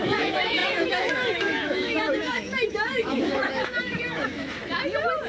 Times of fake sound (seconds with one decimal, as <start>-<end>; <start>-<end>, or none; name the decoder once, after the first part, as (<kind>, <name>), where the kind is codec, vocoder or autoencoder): 0.0-4.6 (autoencoder, DAC-VAE)